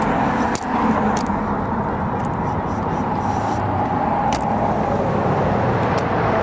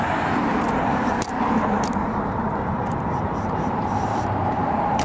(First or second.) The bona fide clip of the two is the first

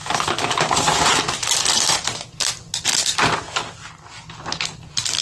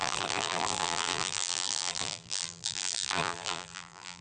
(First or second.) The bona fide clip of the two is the first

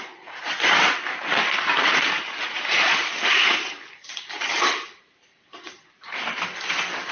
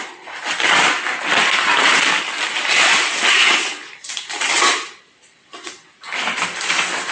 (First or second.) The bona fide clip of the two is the second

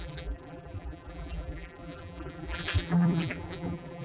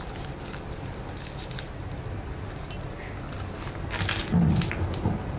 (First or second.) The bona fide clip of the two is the second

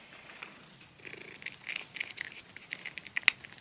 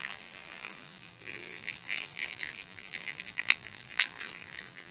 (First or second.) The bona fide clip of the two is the first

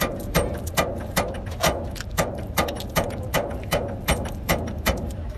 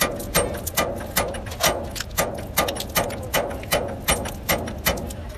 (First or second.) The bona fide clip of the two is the second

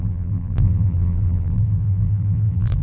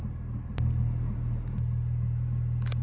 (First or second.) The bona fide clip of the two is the second